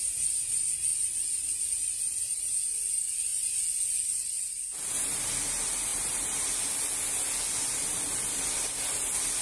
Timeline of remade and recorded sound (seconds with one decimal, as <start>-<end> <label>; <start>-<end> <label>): 0.0-5.9 recorded; 5.9-6.5 remade; 6.5-9.4 recorded